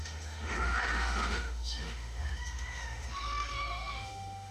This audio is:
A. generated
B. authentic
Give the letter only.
A